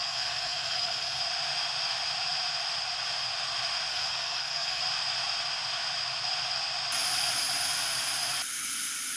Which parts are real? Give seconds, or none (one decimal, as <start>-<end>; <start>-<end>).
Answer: 1.2-3.9; 4.8-9.2